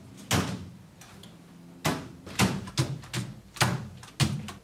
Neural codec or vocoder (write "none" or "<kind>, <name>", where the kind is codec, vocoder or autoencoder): none